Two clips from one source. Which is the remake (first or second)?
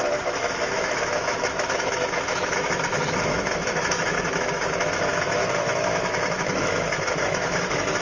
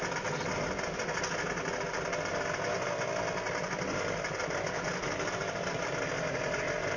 first